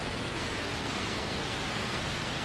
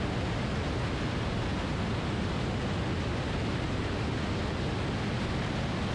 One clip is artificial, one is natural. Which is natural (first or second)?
second